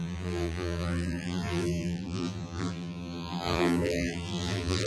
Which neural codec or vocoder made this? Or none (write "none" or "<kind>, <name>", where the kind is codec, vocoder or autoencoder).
vocoder, BigVGAN v2